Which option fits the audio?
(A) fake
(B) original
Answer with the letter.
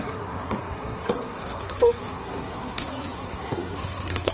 A